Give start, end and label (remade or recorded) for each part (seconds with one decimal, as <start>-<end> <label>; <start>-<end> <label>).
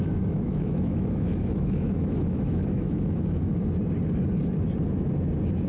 0.0-3.4 remade; 3.4-5.7 recorded